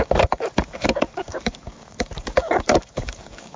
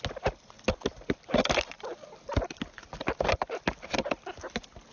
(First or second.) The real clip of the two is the second